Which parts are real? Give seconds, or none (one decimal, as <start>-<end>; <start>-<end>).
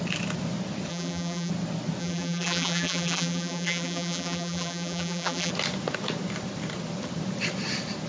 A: 0.0-0.9; 1.5-2.0; 5.5-8.1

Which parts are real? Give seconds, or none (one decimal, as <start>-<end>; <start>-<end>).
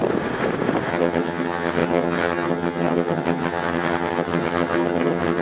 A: 0.0-0.9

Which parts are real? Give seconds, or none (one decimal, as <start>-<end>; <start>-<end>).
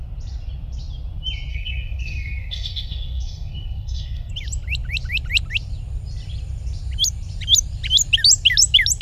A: 0.0-1.5; 4.3-9.0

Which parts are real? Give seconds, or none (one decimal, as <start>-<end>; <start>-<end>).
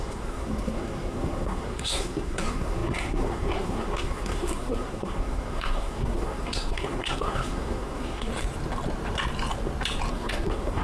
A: 8.3-10.1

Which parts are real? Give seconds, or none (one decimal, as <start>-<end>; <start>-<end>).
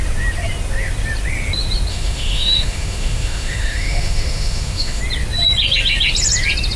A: 0.0-1.9; 5.0-6.8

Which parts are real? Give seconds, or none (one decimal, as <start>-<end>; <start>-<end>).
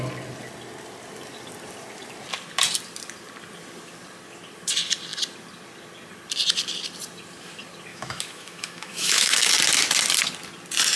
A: 0.0-7.9; 9.5-11.0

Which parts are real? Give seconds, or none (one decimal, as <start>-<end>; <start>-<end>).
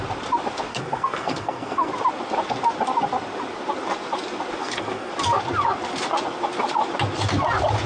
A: 0.0-0.7; 1.9-4.6; 5.1-7.9